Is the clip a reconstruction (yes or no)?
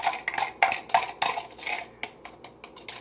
no